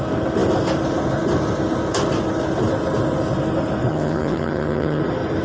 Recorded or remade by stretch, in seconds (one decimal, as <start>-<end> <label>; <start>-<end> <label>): 0.0-3.9 recorded; 3.9-5.0 remade; 5.0-5.4 recorded